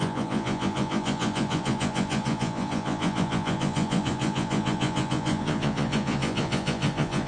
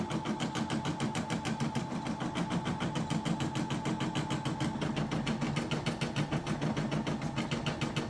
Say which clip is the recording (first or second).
second